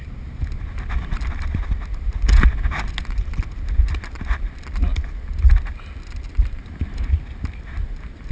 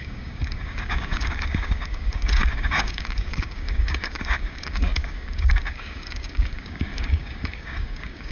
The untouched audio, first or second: first